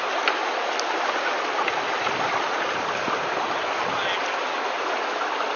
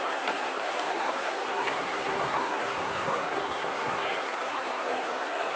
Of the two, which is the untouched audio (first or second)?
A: first